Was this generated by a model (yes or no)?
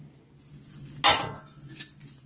no